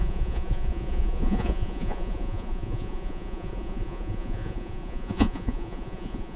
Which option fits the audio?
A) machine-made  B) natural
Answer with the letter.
A